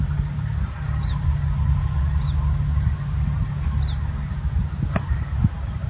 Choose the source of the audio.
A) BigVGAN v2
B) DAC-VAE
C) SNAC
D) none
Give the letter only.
D